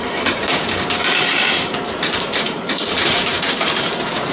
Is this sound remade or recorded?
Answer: remade